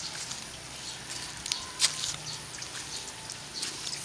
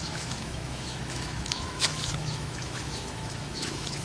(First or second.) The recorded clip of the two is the first